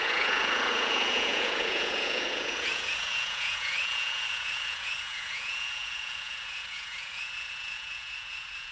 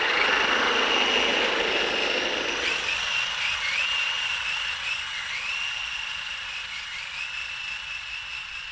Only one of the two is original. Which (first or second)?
second